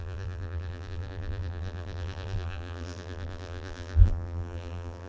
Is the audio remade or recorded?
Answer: remade